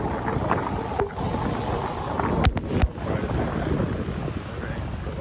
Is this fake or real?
real